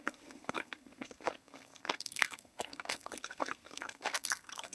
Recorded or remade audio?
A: remade